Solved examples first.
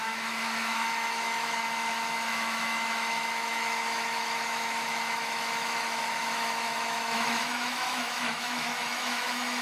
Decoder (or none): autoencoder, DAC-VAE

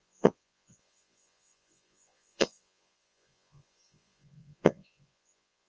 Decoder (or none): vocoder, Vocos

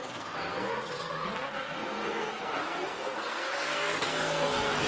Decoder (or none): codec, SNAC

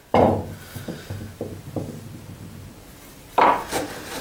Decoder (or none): none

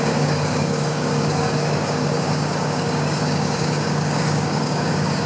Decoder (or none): codec, DAC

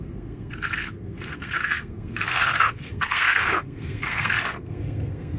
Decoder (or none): codec, SNAC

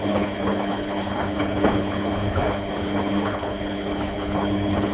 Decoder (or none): codec, HILCodec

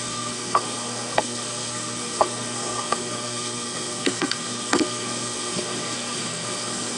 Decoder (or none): codec, SNAC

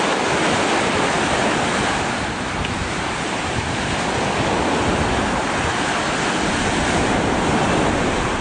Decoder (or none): none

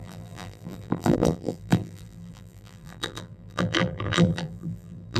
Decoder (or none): vocoder, BigVGAN v2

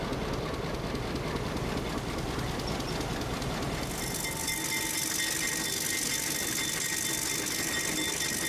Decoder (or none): none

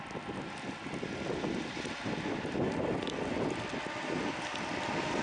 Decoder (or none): none